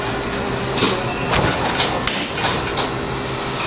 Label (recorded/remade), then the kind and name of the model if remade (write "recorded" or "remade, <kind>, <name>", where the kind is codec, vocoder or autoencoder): recorded